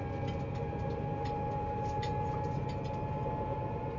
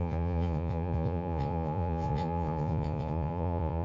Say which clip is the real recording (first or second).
first